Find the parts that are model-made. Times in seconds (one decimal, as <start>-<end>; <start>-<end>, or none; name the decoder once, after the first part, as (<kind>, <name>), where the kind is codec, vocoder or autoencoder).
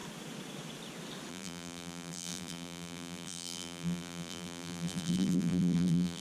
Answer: 1.3-6.2 (vocoder, BigVGAN v2)